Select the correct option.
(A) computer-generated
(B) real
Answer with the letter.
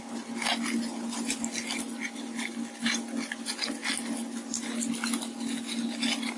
B